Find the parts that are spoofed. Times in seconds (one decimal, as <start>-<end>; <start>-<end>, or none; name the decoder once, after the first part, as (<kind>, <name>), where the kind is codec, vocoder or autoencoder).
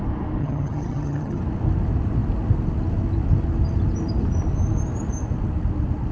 0.4-1.4 (vocoder, HiFi-GAN)